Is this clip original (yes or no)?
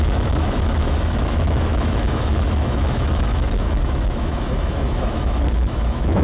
no